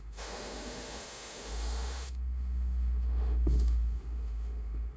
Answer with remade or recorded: remade